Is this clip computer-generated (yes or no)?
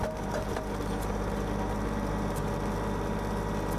no